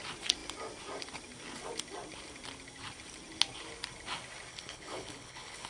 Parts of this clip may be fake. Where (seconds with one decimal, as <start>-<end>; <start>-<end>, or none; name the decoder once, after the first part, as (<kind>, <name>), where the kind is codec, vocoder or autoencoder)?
4.5-5.7 (codec, HILCodec)